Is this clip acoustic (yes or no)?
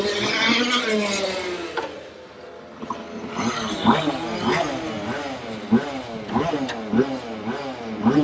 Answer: yes